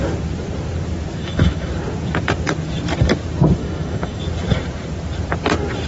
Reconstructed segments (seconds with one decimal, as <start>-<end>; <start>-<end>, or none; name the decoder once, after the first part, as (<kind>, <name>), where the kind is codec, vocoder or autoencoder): 1.2-1.7 (autoencoder, DAC-VAE); 3.6-4.2